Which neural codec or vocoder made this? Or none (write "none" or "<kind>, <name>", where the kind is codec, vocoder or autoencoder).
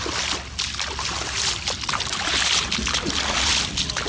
none